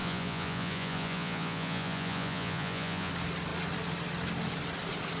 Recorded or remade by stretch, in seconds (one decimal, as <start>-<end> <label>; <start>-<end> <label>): 0.0-3.1 remade; 3.1-5.2 recorded